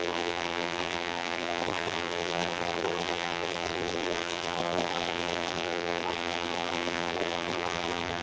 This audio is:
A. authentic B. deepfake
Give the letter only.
B